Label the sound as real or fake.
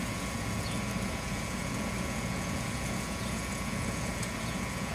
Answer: fake